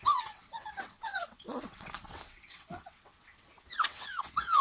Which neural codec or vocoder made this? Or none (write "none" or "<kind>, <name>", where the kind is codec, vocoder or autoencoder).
vocoder, WaveNeXt